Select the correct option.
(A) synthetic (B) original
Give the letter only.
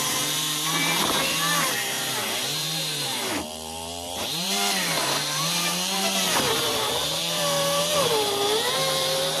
A